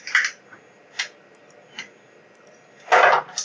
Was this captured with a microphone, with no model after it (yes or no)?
yes